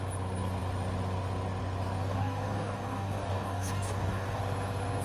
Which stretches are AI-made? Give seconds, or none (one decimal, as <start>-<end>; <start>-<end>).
2.1-4.4